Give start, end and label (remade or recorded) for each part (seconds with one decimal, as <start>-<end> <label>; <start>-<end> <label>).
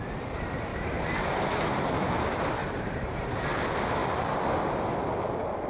0.0-0.7 recorded; 0.7-2.1 remade; 2.1-2.6 recorded; 2.6-3.5 remade; 3.5-5.7 recorded